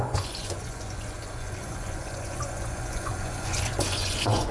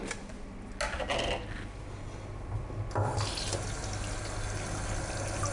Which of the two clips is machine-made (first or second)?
first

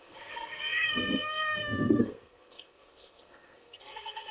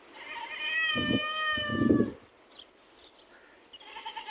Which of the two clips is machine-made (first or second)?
first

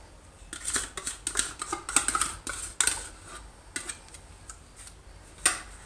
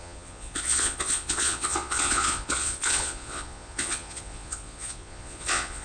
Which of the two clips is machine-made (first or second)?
second